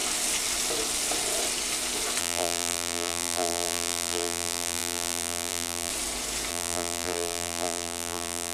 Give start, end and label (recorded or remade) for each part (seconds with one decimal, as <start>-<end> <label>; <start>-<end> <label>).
0.0-2.2 recorded; 2.2-5.9 remade; 5.9-6.5 recorded; 6.5-8.5 remade